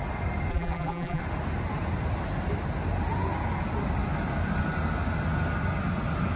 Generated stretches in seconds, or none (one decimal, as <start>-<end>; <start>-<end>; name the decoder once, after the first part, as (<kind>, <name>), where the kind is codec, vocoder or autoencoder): 0.5-1.2 (vocoder, BigVGAN v2)